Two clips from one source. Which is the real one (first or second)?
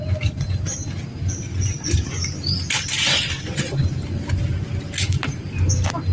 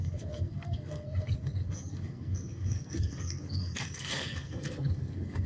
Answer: first